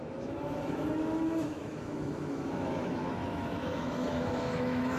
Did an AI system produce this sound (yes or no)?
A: yes